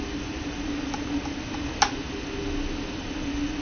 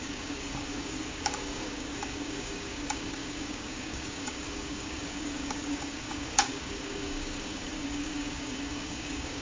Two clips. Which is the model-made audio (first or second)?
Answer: second